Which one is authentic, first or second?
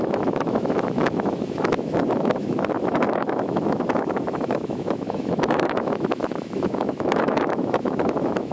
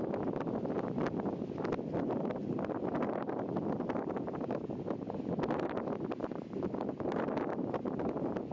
second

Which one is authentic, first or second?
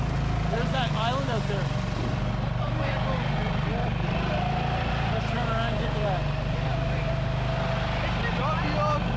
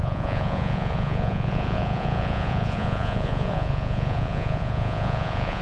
first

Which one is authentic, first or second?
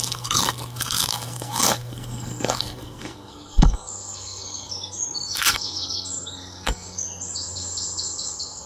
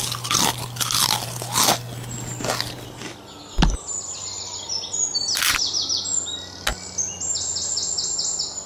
second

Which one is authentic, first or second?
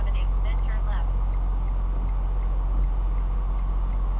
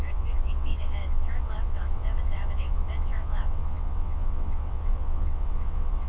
first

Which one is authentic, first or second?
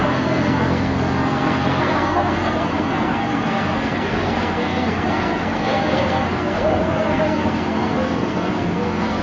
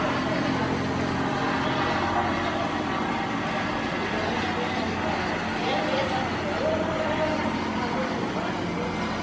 second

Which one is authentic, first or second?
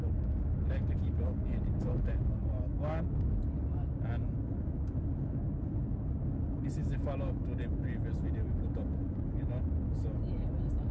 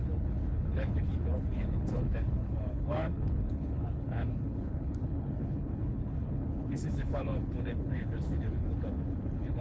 first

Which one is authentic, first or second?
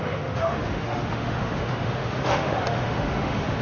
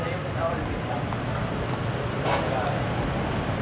second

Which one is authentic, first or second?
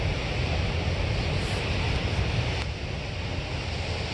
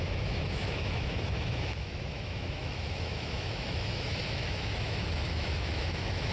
first